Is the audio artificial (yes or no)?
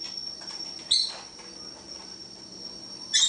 no